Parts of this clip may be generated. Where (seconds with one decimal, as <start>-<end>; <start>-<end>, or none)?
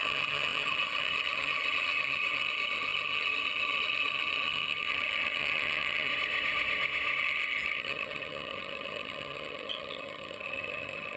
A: 0.0-6.1; 7.2-11.2